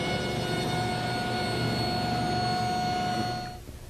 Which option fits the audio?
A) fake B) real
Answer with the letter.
B